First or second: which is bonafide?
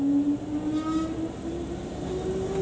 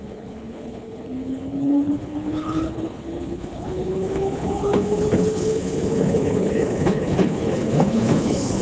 first